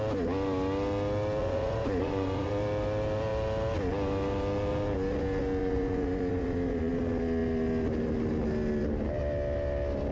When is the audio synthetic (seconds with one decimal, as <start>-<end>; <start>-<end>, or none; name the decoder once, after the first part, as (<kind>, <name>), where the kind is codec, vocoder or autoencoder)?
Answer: 1.4-2.5 (vocoder, Vocos); 5.6-6.9

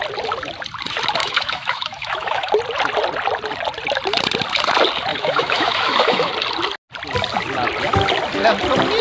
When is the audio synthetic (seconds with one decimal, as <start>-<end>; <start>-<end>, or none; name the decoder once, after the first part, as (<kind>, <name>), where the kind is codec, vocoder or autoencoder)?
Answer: 1.2-2.5 (autoencoder, DAC-VAE); 5.1-6.3